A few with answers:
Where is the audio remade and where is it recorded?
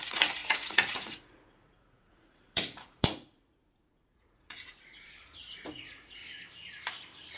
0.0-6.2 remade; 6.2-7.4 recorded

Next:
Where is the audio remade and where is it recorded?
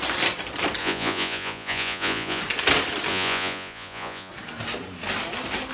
0.0-0.8 recorded; 0.8-2.4 remade; 2.4-3.1 recorded; 3.1-4.3 remade; 4.3-5.7 recorded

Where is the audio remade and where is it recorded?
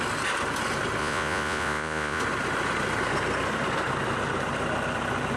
0.0-1.0 recorded; 1.0-2.2 remade; 2.2-5.4 recorded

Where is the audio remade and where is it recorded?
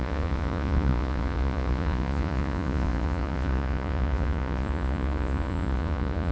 0.0-6.3 remade